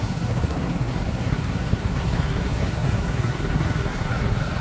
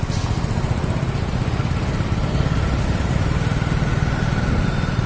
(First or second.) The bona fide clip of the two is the second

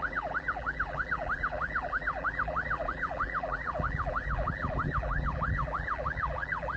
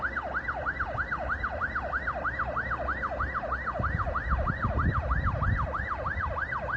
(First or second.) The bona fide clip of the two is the second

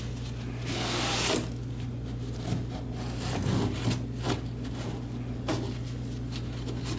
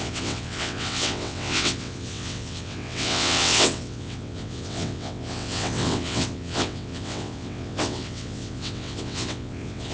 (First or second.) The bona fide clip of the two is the first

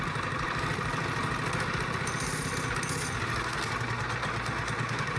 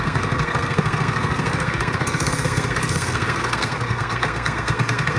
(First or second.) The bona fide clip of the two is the first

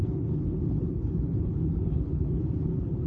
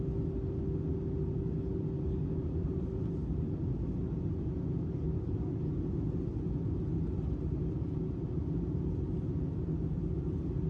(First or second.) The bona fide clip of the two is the second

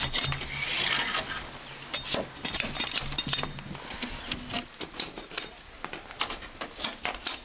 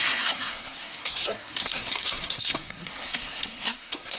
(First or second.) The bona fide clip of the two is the first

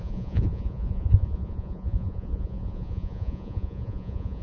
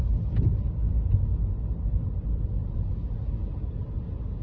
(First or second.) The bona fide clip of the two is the second